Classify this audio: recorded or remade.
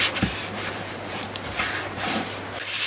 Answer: remade